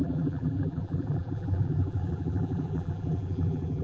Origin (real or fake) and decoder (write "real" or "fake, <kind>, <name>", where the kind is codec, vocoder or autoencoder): fake, vocoder, BigVGAN v2